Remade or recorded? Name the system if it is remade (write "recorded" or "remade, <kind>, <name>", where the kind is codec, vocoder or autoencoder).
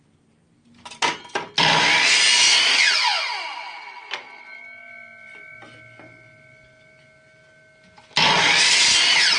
recorded